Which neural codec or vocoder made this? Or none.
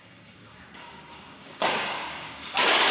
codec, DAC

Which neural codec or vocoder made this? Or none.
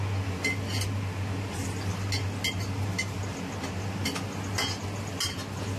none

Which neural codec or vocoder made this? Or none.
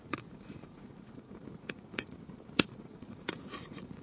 vocoder, Vocos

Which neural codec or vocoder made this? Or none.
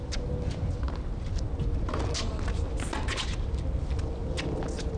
none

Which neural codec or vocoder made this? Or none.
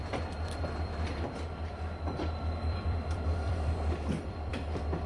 vocoder, BigVGAN v2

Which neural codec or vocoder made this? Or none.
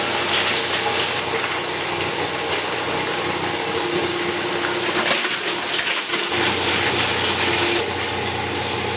none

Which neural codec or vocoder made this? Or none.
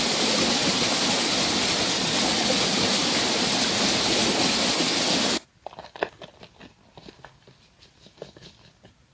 none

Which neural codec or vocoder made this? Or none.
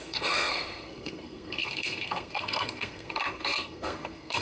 codec, SNAC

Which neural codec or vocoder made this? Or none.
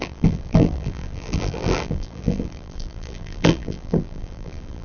vocoder, BigVGAN v2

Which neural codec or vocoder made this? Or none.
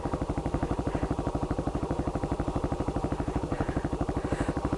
vocoder, BigVGAN v2